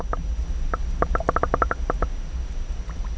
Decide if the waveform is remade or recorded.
recorded